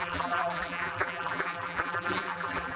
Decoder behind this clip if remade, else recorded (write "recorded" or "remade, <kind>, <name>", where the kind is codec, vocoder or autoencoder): remade, vocoder, BigVGAN v2